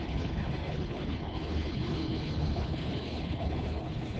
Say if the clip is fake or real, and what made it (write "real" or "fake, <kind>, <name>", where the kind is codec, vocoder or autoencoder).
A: fake, codec, HILCodec